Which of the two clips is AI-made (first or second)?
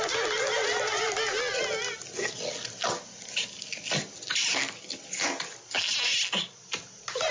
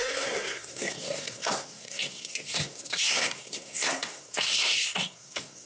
second